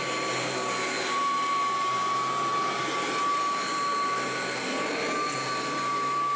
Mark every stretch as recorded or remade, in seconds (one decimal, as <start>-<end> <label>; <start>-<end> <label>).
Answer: 0.0-6.4 recorded